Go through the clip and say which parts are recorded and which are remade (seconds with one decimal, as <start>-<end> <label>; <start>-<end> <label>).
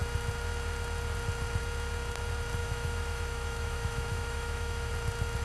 0.0-2.6 recorded; 2.6-4.9 remade; 4.9-5.4 recorded